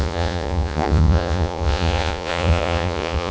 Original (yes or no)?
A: no